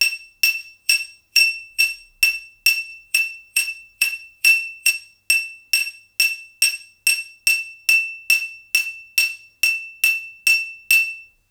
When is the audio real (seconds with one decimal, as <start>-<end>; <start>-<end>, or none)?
0.0-0.6; 1.8-2.9; 4.9-11.5